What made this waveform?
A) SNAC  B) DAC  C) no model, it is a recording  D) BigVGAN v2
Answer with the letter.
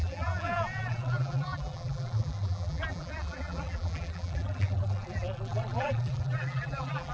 D